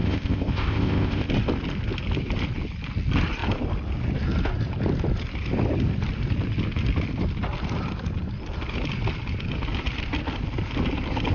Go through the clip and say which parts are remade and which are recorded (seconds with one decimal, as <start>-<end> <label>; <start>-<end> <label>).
0.0-1.3 remade; 1.3-11.3 recorded